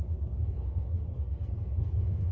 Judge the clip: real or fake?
fake